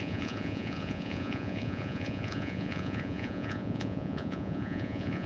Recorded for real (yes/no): no